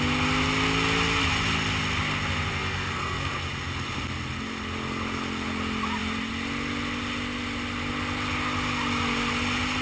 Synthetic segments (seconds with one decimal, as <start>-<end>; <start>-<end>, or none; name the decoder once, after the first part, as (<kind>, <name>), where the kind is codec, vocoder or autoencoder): 2.5-3.3 (codec, SNAC)